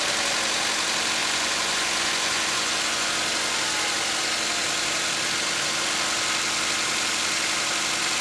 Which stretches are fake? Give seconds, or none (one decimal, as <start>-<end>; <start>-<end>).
1.2-3.1